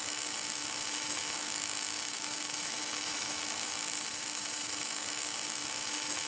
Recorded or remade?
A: remade